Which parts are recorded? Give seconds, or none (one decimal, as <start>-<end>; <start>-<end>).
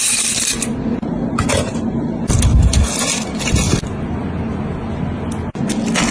0.0-6.1